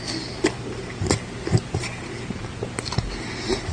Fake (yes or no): no